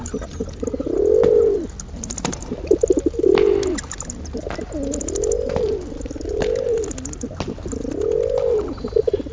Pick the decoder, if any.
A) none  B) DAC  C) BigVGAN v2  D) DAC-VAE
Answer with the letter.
A